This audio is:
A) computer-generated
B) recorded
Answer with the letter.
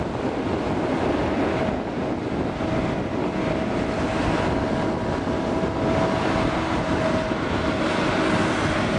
B